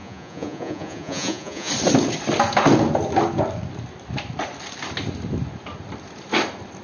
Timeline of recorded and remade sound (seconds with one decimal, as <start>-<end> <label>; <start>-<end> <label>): 0.0-1.7 remade; 1.7-6.8 recorded